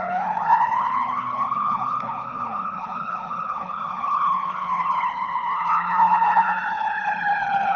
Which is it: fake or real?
fake